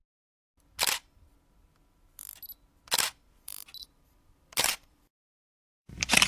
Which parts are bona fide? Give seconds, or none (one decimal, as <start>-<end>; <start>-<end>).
0.0-3.8